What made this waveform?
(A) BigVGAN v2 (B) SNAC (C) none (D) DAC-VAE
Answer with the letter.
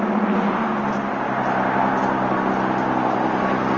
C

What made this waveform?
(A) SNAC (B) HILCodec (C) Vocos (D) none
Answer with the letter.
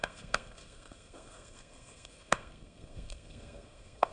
A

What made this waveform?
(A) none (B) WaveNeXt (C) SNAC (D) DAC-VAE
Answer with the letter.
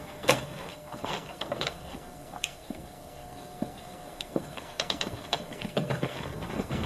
C